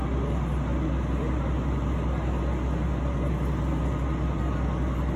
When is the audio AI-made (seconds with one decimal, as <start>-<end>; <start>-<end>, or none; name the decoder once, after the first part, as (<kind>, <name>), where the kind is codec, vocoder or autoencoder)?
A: none